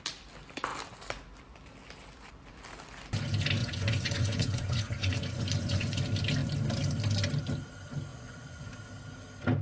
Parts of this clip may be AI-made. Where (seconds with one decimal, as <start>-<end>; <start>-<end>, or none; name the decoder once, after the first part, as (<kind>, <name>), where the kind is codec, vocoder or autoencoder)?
3.6-6.0 (vocoder, Vocos); 8.1-8.7